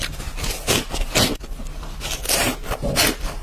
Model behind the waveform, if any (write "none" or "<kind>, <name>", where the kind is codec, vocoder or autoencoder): none